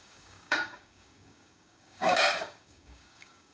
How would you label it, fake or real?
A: fake